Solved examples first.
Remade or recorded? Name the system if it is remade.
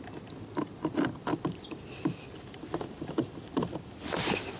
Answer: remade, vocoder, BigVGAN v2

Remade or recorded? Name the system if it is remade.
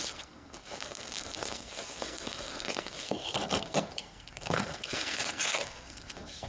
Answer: remade, codec, SNAC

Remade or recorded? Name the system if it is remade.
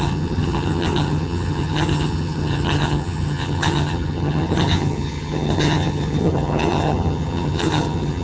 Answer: remade, vocoder, HiFi-GAN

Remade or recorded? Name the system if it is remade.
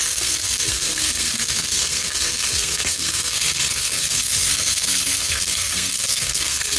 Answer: remade, codec, SNAC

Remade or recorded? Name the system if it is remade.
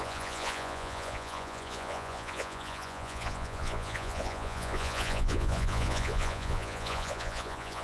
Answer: remade, vocoder, Vocos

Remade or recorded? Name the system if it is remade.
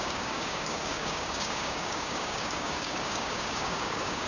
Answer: remade, codec, DAC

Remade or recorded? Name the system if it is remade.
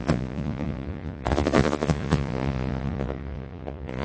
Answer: remade, vocoder, Vocos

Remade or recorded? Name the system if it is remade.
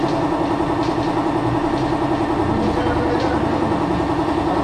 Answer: recorded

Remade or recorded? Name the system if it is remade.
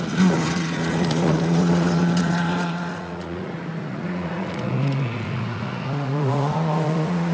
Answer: remade, vocoder, Vocos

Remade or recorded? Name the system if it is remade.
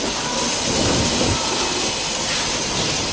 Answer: remade, vocoder, BigVGAN v2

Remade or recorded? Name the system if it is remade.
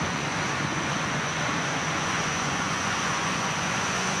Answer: remade, vocoder, Vocos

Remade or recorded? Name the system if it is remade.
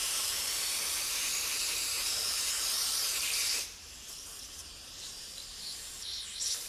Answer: remade, vocoder, BigVGAN v2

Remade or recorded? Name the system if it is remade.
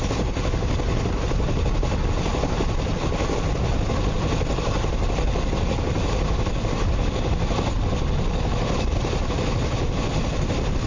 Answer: recorded